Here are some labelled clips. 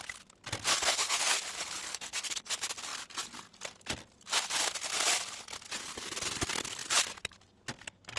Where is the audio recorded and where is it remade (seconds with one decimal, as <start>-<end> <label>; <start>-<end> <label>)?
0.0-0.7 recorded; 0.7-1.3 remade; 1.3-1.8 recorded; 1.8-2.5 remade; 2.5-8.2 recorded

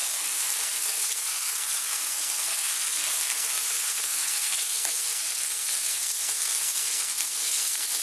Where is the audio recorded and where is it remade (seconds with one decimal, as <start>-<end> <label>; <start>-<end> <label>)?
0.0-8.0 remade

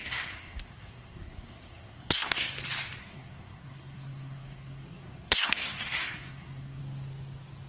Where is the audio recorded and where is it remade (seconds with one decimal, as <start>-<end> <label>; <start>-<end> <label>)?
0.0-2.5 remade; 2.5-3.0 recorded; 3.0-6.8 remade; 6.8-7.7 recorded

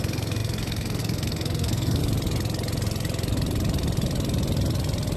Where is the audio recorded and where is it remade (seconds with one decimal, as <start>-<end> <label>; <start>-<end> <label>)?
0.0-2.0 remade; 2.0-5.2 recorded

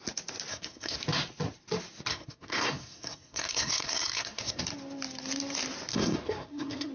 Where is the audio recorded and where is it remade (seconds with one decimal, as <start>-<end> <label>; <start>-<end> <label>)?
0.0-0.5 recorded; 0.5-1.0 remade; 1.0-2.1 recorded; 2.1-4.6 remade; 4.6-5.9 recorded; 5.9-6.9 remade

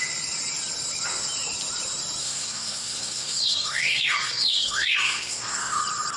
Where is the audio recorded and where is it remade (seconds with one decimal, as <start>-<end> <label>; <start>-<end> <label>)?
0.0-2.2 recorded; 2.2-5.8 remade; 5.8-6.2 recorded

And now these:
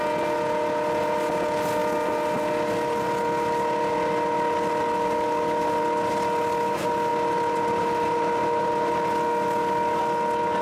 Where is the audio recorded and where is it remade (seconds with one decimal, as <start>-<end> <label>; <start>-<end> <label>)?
0.0-10.6 recorded